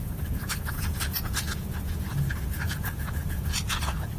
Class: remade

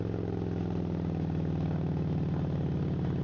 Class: recorded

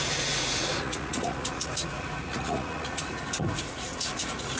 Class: remade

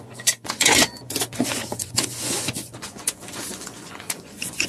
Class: remade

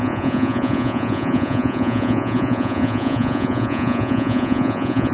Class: remade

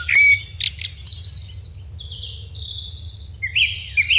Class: recorded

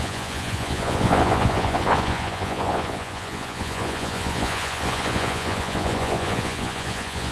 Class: remade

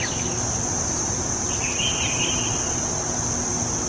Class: recorded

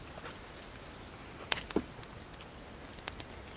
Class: recorded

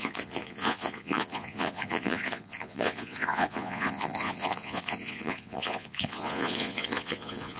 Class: remade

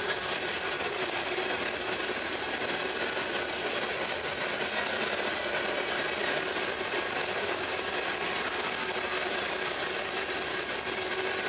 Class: recorded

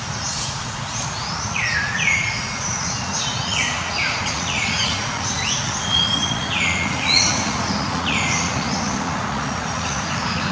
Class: remade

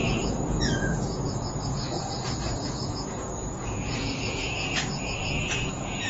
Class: remade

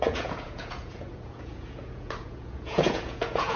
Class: remade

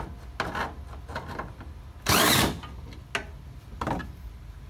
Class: recorded